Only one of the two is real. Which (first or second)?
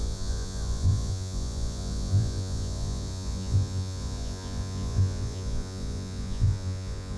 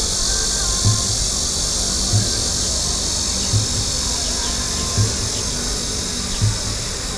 second